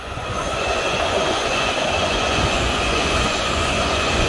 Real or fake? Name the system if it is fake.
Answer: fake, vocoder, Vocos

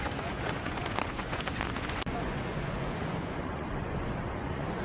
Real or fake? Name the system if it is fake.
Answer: fake, vocoder, Vocos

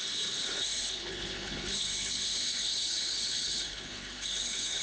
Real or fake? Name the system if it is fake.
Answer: fake, codec, HILCodec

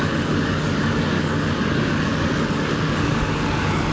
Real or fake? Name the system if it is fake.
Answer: fake, codec, DAC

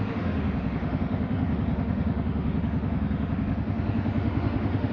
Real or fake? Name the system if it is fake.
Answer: fake, autoencoder, DAC-VAE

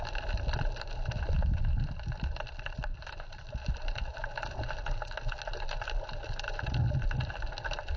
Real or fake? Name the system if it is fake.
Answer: real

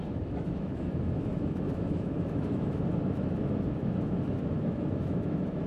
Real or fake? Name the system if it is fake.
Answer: fake, autoencoder, DAC-VAE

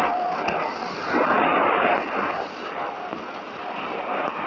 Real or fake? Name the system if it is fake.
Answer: real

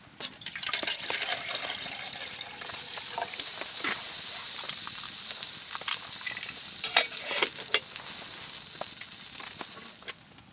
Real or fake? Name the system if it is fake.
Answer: real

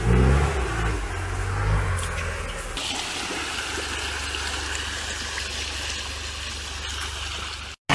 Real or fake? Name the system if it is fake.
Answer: real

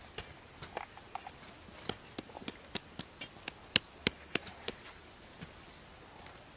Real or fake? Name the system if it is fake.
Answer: real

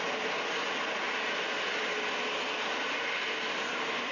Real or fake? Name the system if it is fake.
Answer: real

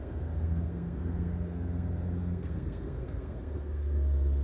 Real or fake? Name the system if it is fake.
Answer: fake, codec, SNAC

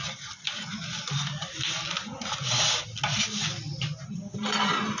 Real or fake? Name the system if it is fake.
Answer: real